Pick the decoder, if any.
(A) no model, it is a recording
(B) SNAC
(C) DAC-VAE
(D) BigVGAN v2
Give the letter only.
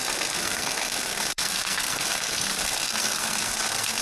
B